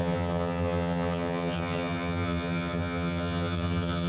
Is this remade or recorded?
remade